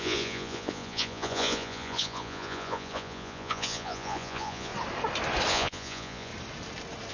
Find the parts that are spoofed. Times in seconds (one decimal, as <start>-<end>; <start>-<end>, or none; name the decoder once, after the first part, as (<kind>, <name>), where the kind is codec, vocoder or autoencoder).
0.0-4.7 (vocoder, Vocos); 5.5-6.3